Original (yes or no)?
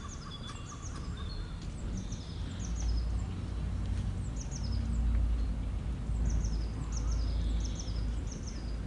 yes